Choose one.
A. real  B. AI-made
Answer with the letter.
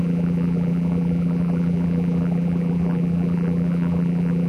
B